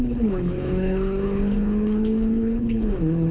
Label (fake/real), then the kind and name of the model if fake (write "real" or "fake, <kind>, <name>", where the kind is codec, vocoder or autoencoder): fake, codec, HILCodec